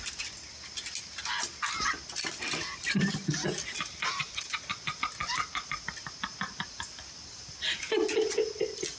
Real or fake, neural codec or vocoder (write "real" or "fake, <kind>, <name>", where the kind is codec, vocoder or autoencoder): real